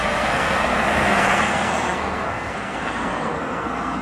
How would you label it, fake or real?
fake